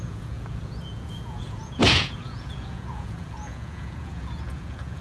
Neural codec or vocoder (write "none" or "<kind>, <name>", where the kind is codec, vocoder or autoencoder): vocoder, Vocos